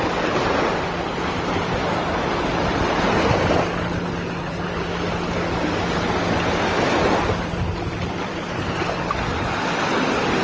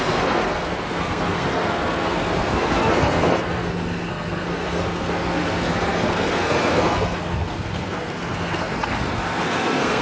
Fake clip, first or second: second